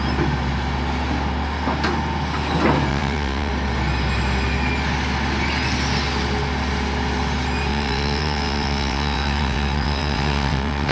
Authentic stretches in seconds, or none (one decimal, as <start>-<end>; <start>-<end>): 0.0-2.9; 3.5-7.7